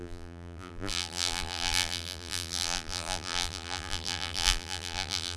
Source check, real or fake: fake